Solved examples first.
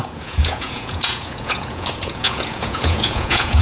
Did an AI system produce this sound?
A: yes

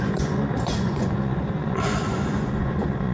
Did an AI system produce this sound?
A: yes